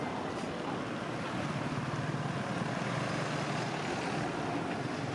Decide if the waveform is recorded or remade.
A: recorded